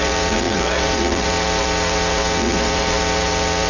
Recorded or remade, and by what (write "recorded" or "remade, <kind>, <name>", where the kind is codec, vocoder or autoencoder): remade, vocoder, WaveNeXt